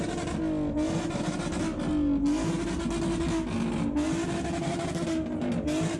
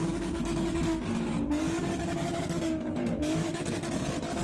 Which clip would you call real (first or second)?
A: first